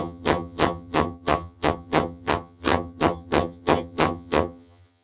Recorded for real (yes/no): no